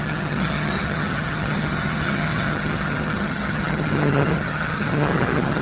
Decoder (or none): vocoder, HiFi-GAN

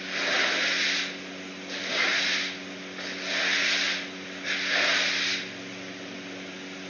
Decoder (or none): none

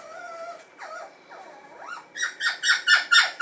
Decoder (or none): none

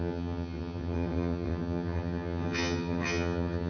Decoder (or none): vocoder, HiFi-GAN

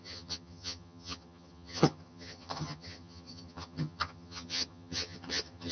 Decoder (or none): vocoder, HiFi-GAN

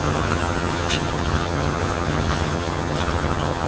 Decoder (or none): vocoder, HiFi-GAN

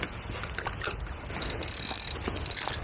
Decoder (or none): none